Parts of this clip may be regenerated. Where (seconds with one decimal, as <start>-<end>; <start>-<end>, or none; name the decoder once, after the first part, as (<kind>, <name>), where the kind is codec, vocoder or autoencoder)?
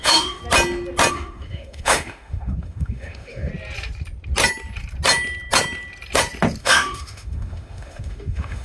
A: 0.0-0.4 (autoencoder, DAC-VAE); 1.1-3.5; 6.6-8.6